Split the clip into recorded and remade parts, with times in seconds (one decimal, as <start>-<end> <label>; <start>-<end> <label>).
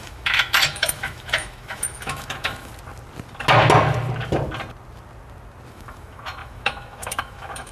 0.0-2.7 remade; 2.7-5.7 recorded; 5.7-7.7 remade